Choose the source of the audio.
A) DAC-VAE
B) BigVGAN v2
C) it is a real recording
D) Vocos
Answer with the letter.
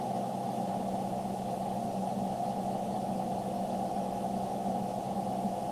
A